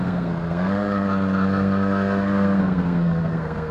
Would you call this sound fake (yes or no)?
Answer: yes